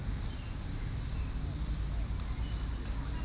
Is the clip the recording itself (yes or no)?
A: yes